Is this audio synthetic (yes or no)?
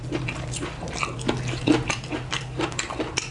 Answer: no